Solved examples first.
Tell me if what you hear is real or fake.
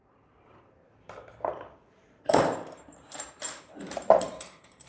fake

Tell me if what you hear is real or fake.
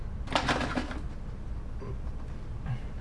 real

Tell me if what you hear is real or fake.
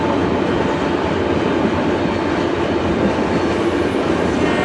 real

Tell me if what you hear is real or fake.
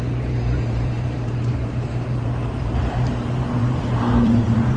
fake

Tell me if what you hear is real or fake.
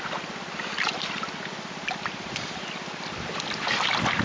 fake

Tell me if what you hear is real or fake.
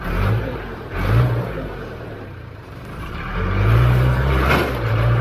fake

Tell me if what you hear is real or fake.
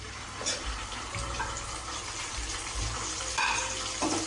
fake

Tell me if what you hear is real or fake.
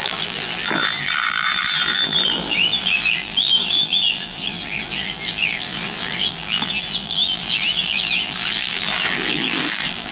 fake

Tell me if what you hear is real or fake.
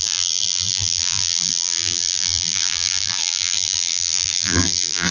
fake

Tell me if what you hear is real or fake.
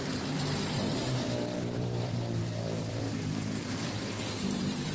fake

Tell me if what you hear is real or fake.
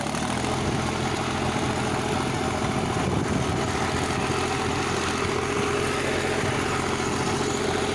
real